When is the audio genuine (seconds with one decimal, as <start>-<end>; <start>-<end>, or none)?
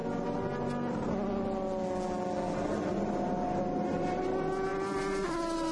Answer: 0.0-5.7